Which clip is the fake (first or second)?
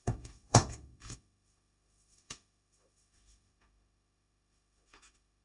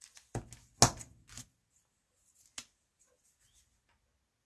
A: first